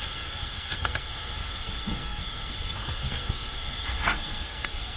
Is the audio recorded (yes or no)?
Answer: no